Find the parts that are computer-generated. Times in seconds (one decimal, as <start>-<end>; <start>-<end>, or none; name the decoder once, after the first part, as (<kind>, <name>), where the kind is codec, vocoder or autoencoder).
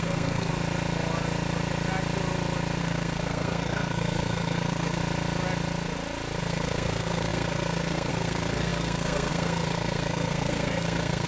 0.0-0.5 (codec, SNAC); 2.8-5.0; 6.4-11.3